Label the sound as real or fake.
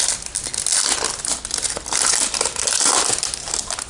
real